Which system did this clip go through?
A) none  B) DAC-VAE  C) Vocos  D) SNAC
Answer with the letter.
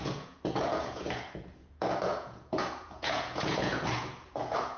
C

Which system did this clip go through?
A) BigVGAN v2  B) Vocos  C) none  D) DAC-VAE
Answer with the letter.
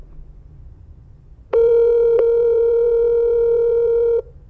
B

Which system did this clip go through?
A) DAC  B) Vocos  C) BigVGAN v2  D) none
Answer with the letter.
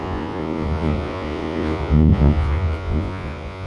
B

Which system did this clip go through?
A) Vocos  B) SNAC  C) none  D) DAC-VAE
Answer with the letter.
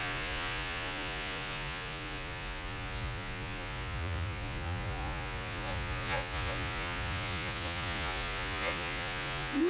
A